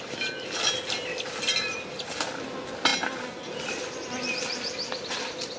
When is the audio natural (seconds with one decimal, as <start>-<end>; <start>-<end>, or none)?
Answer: 0.0-5.6